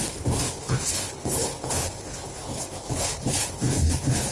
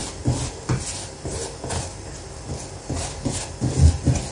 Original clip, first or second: second